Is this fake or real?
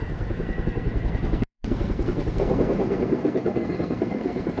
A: fake